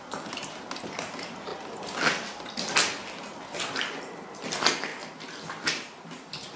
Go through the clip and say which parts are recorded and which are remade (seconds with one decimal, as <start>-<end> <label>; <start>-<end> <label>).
0.0-6.6 recorded